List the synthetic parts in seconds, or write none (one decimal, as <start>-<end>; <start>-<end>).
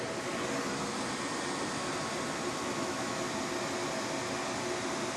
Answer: 2.6-3.2